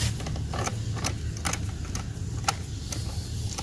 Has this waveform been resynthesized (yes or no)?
no